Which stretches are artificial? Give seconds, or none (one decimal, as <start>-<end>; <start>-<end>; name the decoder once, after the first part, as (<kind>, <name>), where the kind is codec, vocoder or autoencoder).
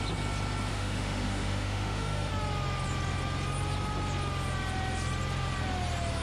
0.7-2.3 (autoencoder, DAC-VAE)